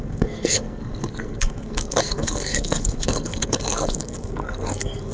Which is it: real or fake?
fake